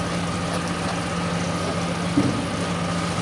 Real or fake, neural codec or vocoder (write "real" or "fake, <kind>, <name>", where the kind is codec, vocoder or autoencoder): real